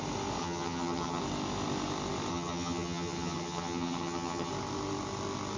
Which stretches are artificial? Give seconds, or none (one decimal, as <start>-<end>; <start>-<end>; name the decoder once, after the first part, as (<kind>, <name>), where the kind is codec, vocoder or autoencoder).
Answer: 0.4-1.2 (vocoder, HiFi-GAN); 2.3-4.5